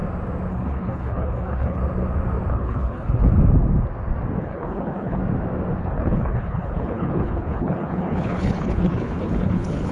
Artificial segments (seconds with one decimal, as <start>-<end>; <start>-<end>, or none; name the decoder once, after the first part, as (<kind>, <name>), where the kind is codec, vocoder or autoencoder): 0.5-1.8 (codec, HILCodec); 2.5-3.3; 4.4-5.2; 5.8-9.9